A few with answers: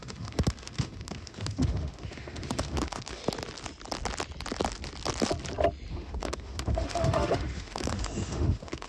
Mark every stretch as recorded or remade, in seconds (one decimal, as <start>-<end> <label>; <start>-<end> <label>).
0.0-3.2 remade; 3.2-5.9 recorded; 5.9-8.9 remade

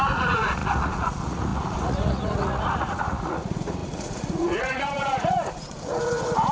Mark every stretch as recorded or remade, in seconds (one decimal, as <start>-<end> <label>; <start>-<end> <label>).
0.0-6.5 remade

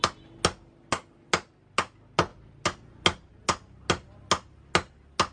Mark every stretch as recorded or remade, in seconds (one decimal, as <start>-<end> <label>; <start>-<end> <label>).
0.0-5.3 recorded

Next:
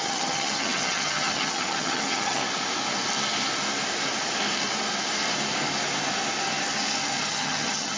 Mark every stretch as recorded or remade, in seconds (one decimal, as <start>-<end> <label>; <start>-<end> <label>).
0.0-2.4 remade; 2.4-7.2 recorded; 7.2-8.0 remade

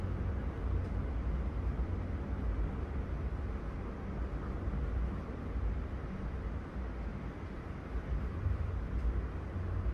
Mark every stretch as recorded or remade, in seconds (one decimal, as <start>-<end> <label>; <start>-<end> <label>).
0.0-7.1 recorded; 7.1-8.7 remade; 8.7-9.9 recorded

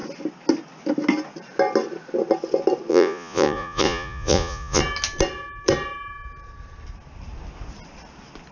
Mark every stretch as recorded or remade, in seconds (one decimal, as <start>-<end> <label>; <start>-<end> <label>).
0.0-2.9 recorded; 2.9-4.8 remade; 4.8-8.5 recorded

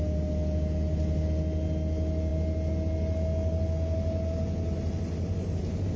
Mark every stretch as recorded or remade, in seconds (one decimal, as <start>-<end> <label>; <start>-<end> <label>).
0.0-6.0 recorded